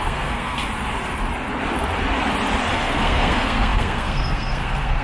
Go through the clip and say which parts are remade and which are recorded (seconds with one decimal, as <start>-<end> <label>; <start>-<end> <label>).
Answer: 0.0-0.6 remade; 0.6-2.7 recorded; 2.7-5.0 remade